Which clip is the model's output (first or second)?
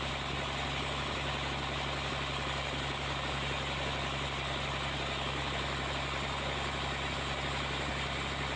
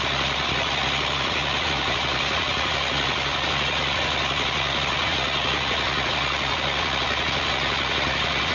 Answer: second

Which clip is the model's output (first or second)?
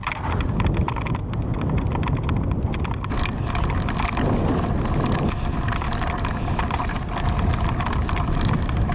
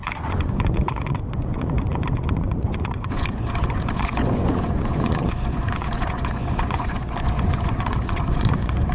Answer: second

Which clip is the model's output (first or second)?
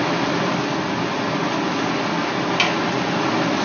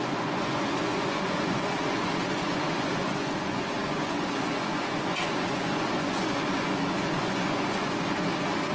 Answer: second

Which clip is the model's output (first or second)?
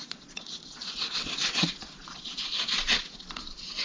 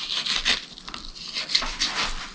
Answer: first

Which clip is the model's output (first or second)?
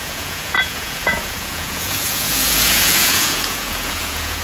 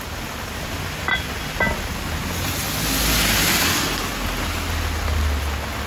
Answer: first